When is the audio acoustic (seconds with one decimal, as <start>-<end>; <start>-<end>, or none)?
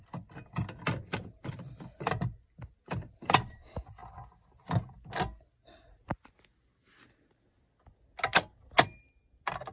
0.0-9.7